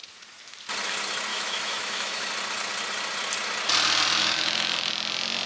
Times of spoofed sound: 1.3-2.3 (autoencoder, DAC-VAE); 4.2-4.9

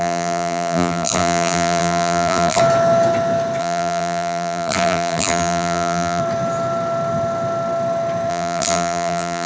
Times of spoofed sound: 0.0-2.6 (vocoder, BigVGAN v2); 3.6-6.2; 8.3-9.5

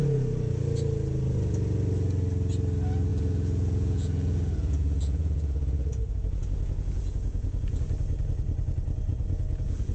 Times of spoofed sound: 3.1-7.8 (vocoder, Vocos); 9.1-9.9

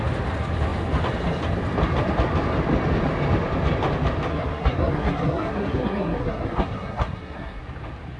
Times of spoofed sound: 4.3-7.6 (codec, SNAC)

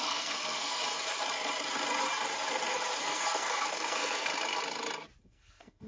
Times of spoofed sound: 0.0-0.8 (codec, SNAC); 3.0-4.3; 5.2-5.9

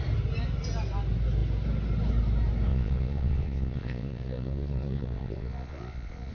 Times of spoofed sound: 2.7-6.3 (vocoder, Vocos)

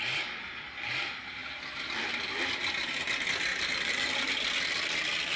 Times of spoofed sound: 3.5-4.1 (vocoder, BigVGAN v2)